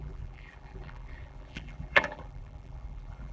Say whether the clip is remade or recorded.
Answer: remade